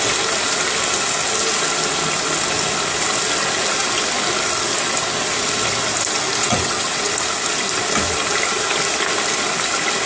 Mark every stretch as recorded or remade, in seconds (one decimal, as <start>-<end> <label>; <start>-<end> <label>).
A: 0.0-6.4 recorded; 6.4-7.1 remade; 7.1-10.1 recorded